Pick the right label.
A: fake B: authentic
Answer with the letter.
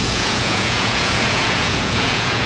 A